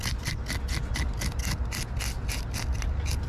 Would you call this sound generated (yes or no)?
no